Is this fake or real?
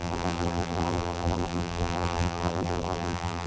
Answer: fake